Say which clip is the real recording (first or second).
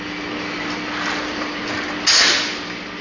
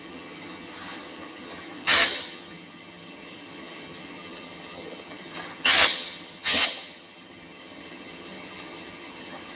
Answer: first